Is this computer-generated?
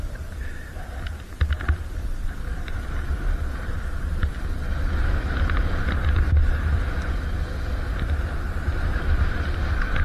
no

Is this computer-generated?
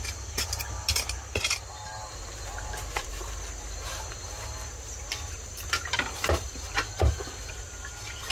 yes